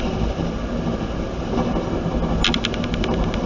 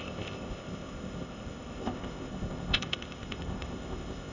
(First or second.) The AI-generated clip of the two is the second